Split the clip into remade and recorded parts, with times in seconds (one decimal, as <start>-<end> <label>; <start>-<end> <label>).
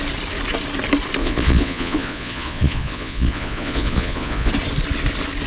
0.0-1.2 recorded; 1.2-4.5 remade; 4.5-5.5 recorded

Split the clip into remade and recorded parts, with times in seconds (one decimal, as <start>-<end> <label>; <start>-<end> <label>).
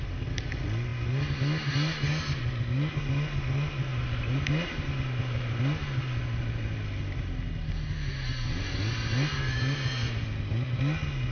0.0-11.3 recorded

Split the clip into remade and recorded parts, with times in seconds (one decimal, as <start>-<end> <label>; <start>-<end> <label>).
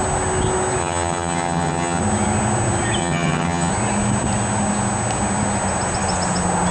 0.0-0.8 recorded; 0.8-2.0 remade; 2.0-3.0 recorded; 3.0-3.7 remade; 3.7-6.7 recorded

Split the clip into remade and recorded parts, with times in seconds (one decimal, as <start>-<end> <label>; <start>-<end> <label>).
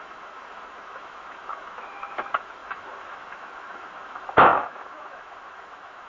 0.0-6.1 remade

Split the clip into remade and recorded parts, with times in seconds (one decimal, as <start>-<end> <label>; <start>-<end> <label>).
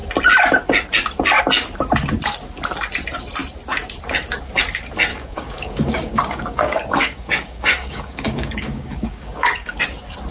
0.0-5.1 recorded; 5.1-9.8 remade; 9.8-10.3 recorded